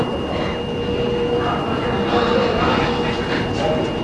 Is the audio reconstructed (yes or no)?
no